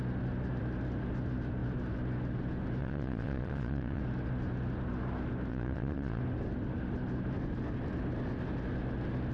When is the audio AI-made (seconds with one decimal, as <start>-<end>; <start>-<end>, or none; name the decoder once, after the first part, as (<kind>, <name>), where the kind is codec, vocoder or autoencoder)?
2.8-4.0 (vocoder, Vocos); 5.5-6.2